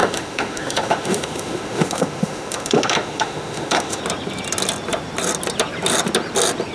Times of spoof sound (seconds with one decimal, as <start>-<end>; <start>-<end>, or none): 0.0-4.0